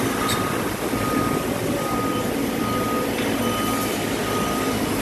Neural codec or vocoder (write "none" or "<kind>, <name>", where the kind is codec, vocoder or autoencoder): none